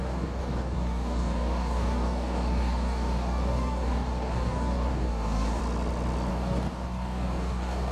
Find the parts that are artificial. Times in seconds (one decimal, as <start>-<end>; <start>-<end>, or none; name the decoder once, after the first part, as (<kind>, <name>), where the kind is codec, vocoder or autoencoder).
0.0-5.6 (codec, DAC); 6.3-7.9

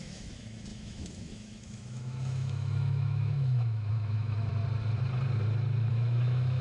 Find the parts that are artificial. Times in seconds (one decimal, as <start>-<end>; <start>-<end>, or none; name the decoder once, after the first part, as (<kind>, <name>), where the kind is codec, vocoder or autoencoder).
0.0-4.5 (autoencoder, DAC-VAE); 5.9-6.6